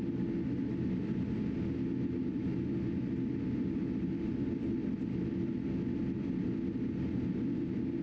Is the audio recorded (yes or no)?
yes